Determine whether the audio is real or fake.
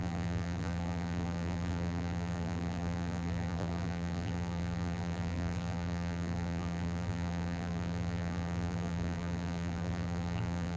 fake